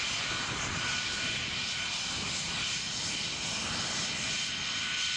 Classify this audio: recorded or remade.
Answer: recorded